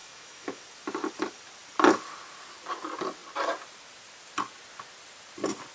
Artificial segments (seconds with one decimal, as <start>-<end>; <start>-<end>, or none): 0.0-0.6